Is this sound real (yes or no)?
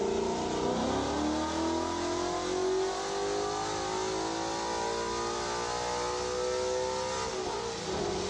yes